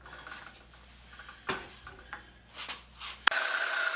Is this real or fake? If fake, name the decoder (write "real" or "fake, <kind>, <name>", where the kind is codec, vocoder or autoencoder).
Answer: real